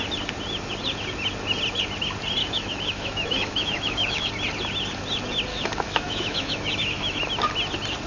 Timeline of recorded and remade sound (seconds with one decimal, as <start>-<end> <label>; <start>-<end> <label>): 0.0-2.4 recorded; 2.4-4.3 remade; 4.3-5.5 recorded; 5.5-7.3 remade; 7.3-8.1 recorded